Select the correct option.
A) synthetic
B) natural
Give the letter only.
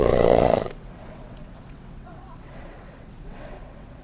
A